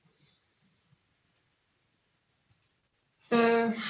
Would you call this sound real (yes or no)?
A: yes